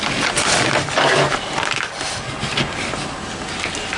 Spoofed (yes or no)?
no